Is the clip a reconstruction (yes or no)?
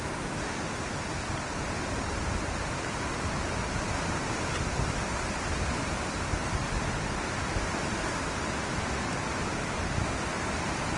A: no